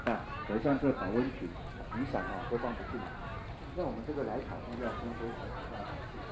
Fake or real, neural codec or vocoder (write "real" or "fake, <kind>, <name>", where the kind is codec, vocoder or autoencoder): real